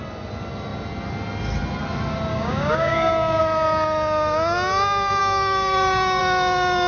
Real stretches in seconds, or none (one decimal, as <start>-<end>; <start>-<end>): 0.0-2.3; 3.4-5.2; 6.2-6.9